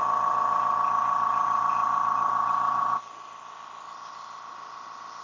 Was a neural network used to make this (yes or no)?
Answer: no